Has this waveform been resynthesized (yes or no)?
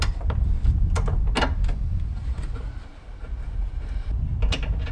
no